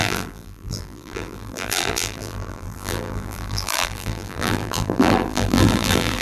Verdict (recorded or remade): remade